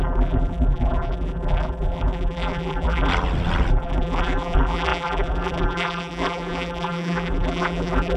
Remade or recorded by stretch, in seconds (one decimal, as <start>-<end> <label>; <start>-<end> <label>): 0.0-3.1 remade; 3.1-3.7 recorded; 3.7-8.2 remade